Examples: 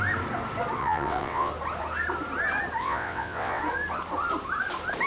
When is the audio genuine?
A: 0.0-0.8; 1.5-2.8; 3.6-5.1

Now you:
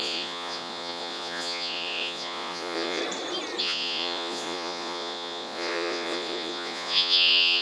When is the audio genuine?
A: 3.0-3.6

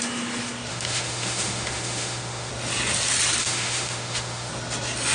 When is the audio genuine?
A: 0.0-0.7; 2.5-3.4; 4.5-5.1

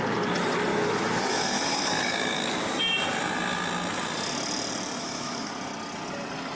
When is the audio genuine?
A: 0.0-0.7; 2.8-5.0; 5.5-6.6

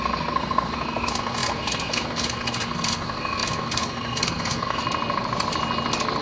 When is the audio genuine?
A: 4.8-6.2

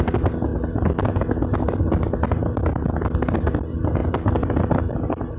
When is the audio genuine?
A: 0.0-5.4

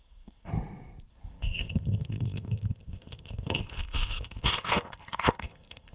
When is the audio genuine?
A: 0.5-1.1